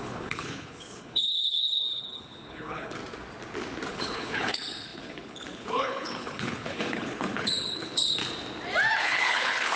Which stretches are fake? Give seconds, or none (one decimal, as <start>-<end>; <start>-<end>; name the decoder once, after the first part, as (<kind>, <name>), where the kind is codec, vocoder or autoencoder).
0.0-3.0 (codec, HILCodec); 3.9-8.2; 9.0-9.8